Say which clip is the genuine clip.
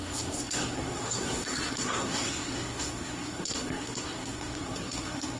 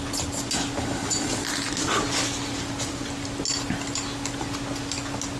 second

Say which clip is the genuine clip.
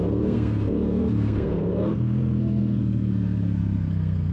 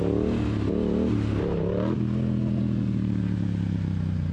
second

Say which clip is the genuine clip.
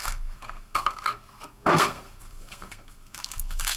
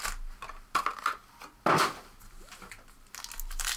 second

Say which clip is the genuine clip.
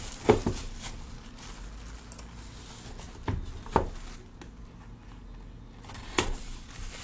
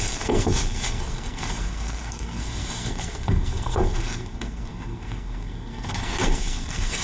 first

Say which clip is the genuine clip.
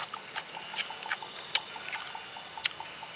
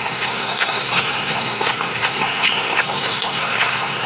first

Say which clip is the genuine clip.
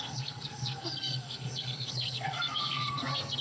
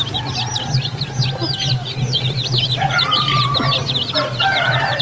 second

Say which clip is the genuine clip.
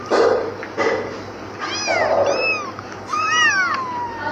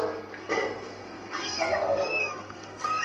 first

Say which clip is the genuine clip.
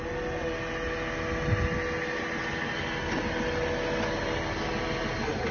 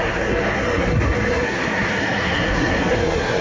first